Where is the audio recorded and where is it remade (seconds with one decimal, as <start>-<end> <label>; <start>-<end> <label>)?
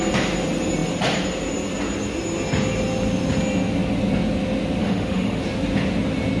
0.0-4.8 recorded; 4.8-5.4 remade; 5.4-6.4 recorded